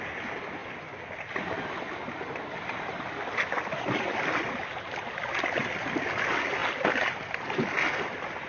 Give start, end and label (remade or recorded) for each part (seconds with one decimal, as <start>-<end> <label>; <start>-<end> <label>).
0.0-8.5 recorded